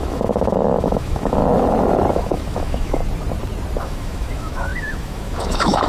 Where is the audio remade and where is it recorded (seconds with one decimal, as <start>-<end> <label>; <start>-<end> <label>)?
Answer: 0.0-1.4 remade; 1.4-2.1 recorded; 2.1-3.0 remade; 3.0-3.8 recorded; 3.8-5.9 remade